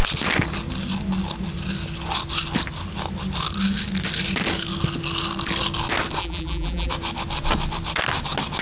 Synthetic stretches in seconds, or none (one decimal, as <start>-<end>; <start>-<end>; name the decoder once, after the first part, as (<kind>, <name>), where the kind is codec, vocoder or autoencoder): 6.2-6.9 (vocoder, BigVGAN v2)